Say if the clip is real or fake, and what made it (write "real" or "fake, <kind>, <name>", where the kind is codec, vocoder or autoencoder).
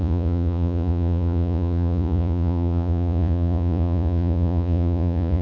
fake, vocoder, Vocos